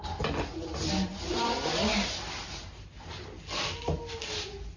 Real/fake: real